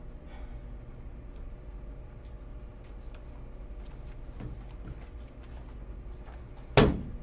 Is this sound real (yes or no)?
yes